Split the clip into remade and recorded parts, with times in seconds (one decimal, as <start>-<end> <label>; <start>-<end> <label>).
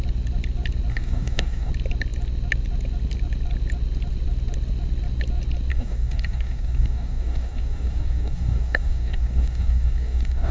0.0-0.9 recorded; 0.9-1.7 remade; 1.7-5.7 recorded; 5.7-10.5 remade